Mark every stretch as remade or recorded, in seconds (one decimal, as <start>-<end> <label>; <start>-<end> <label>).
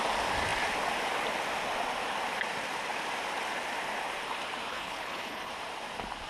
0.0-4.7 recorded; 4.7-5.5 remade; 5.5-6.3 recorded